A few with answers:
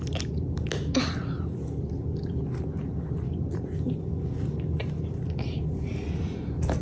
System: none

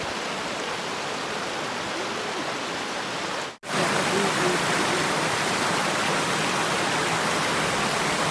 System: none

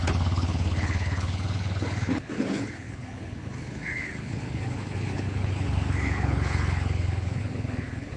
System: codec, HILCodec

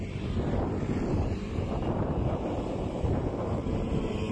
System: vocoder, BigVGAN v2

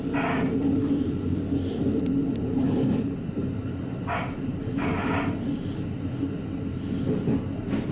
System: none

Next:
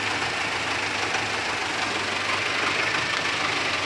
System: none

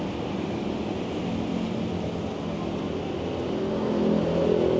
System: none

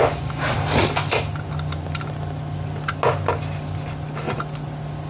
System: none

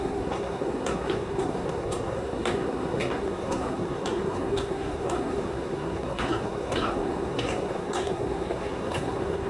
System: codec, SNAC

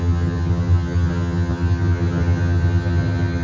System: vocoder, HiFi-GAN